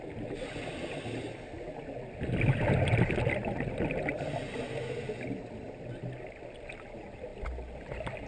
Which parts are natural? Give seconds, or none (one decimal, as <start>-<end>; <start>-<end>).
0.0-8.3